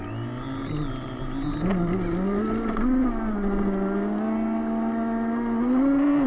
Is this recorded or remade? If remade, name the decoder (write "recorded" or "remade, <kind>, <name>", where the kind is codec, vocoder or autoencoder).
recorded